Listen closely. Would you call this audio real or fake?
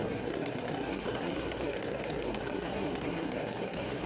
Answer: fake